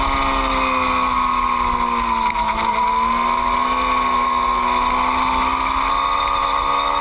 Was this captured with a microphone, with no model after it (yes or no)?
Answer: yes